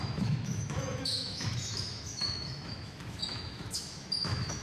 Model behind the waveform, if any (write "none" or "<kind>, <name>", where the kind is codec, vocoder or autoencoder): autoencoder, DAC-VAE